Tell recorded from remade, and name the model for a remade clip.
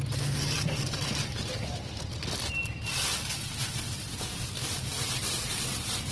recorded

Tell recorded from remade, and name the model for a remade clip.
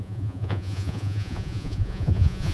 remade, vocoder, Vocos